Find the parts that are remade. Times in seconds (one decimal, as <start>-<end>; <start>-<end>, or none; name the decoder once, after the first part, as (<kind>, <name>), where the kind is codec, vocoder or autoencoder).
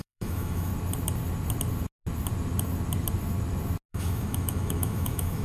0.0-0.7 (autoencoder, DAC-VAE); 3.9-5.4